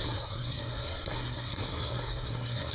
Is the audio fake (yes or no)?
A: yes